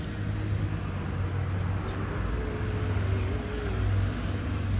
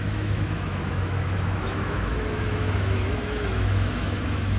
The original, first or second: first